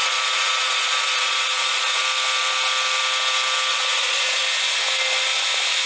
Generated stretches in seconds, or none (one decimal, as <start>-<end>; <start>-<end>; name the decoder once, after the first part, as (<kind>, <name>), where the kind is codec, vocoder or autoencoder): 0.0-2.0 (vocoder, Vocos); 3.7-4.4